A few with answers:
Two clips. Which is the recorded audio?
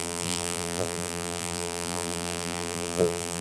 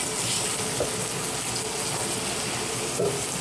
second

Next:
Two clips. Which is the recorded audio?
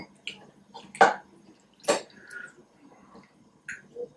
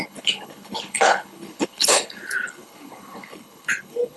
first